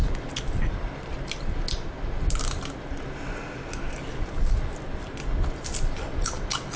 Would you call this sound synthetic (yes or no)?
no